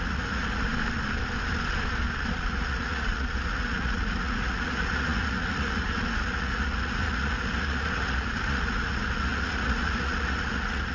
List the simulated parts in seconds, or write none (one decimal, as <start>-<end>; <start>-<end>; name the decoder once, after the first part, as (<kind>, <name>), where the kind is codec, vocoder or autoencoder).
0.0-0.7 (vocoder, Vocos); 2.2-10.9